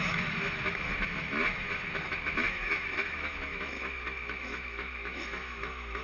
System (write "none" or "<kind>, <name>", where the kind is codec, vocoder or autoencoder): autoencoder, DAC-VAE